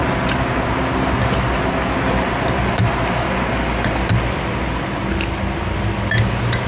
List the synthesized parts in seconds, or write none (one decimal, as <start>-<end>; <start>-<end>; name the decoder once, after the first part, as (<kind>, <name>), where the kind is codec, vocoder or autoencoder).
0.0-6.7 (vocoder, BigVGAN v2)